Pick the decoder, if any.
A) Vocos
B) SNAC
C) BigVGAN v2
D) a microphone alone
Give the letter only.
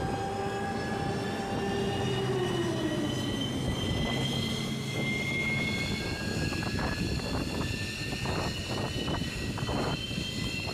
D